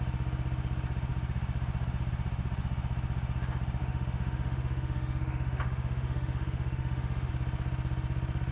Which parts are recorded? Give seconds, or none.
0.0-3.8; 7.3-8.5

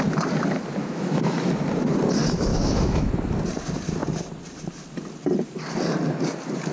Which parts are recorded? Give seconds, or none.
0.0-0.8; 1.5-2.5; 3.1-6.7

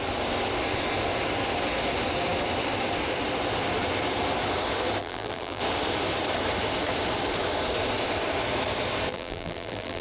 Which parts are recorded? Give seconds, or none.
0.0-5.0; 5.6-9.1

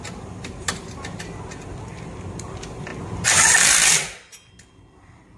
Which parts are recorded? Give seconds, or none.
2.9-3.7

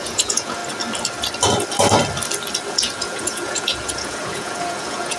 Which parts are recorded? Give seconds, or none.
0.6-2.7

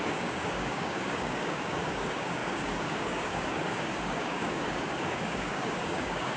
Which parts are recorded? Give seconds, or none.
none